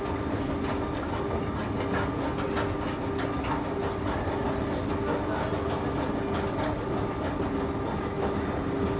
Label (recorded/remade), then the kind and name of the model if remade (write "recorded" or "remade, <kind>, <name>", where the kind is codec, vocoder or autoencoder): recorded